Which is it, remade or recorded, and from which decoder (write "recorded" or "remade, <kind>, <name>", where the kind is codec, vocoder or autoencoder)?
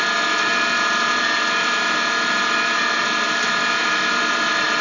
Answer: recorded